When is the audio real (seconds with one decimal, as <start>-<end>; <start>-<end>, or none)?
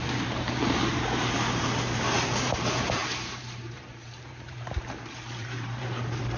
none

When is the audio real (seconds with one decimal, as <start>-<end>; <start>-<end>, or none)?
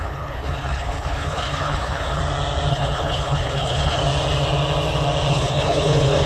2.2-2.7; 4.0-5.3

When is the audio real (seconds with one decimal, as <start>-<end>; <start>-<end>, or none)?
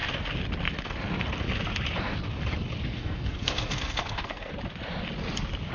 0.0-3.0; 4.5-5.7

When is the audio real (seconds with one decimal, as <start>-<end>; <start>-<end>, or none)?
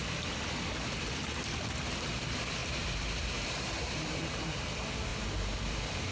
0.0-2.6; 4.6-5.1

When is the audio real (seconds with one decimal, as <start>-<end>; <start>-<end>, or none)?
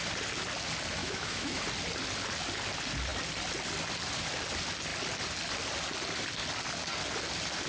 0.0-1.0; 1.6-7.7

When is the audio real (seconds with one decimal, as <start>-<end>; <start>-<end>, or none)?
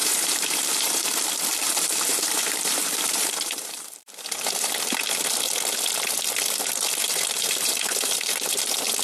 1.0-1.6; 5.0-7.0; 8.6-9.0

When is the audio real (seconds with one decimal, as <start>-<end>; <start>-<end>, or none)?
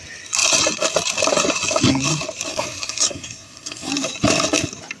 0.0-2.5; 3.9-5.0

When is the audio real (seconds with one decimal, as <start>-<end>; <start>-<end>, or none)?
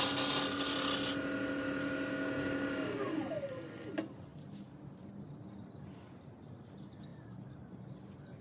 0.0-2.1; 3.2-8.4